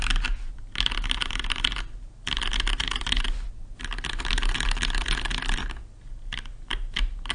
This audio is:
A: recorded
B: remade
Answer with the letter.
A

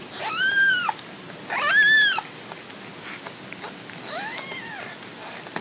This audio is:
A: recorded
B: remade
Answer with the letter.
A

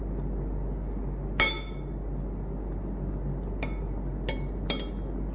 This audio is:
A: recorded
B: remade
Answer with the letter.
A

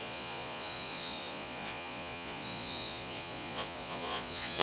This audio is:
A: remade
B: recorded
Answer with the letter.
A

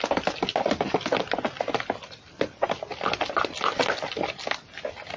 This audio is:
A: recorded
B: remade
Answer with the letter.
A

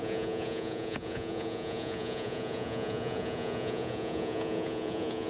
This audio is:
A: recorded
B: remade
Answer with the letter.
B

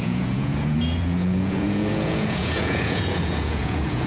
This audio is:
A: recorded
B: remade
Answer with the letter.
B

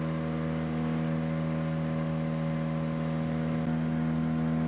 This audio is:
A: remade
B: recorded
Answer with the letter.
B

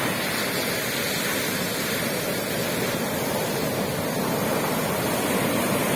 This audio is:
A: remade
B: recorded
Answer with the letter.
B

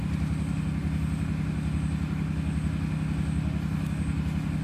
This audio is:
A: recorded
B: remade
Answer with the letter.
A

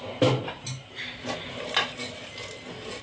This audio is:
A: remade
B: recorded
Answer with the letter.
B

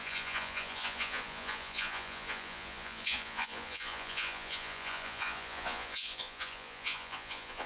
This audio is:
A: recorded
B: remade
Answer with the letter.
B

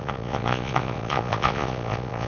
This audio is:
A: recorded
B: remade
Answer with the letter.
B